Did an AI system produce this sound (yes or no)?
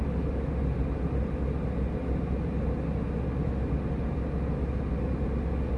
no